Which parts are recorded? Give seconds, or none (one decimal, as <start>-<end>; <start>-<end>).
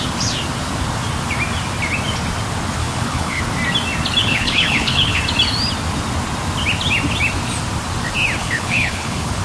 0.0-2.8; 3.4-4.2; 5.2-8.4